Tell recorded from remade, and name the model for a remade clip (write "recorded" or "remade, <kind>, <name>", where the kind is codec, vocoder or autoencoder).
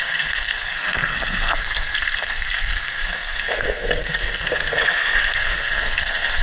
remade, codec, SNAC